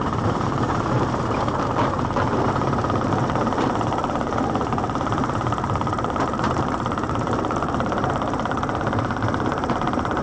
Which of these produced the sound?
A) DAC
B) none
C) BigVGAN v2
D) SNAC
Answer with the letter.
C